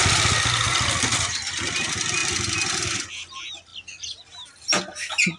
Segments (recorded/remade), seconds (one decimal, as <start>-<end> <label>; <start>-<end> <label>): 0.0-5.4 recorded